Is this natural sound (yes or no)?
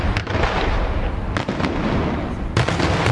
yes